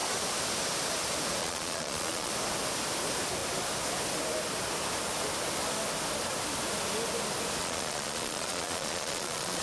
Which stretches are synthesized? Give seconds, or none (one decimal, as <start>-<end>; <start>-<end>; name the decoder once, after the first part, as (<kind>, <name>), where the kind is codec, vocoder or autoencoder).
1.4-2.3 (vocoder, Vocos); 7.6-9.6